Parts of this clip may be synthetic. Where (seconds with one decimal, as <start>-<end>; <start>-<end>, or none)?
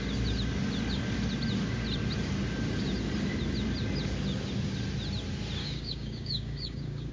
5.6-7.1